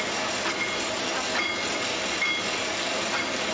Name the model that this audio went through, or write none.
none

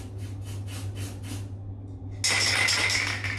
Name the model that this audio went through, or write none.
none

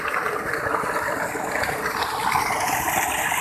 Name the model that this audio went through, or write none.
none